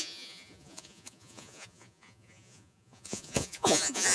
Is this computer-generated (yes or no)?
yes